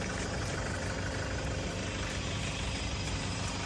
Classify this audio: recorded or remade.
recorded